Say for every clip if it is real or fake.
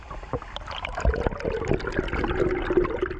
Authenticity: real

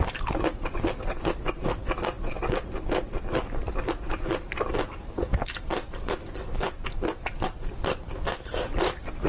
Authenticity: real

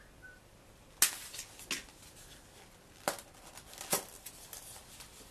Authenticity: real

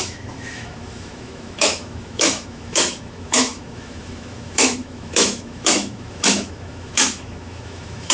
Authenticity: fake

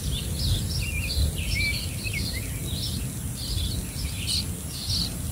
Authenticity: real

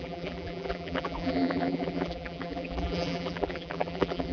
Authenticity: fake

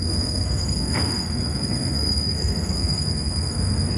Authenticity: fake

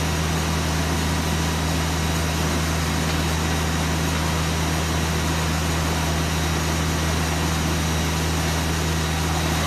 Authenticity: real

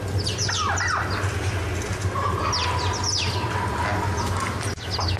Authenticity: real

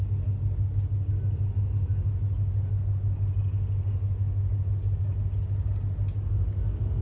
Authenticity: real